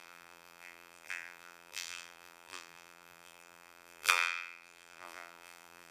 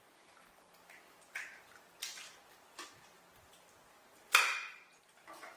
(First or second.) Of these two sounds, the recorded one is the second